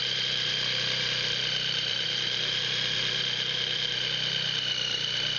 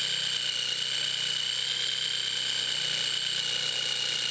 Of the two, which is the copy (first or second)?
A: first